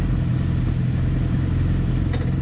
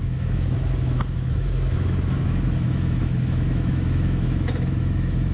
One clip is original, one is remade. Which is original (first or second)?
first